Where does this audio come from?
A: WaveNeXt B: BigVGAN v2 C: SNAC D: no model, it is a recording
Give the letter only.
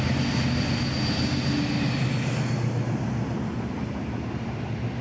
D